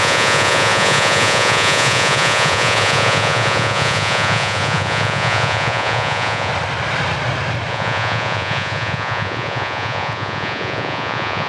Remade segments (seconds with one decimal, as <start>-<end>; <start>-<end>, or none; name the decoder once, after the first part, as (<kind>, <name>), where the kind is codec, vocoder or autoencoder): 0.0-6.5 (vocoder, Vocos); 7.7-11.5